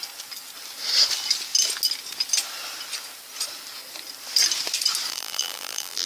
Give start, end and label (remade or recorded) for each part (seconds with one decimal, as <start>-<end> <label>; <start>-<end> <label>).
0.0-5.1 recorded; 5.1-6.1 remade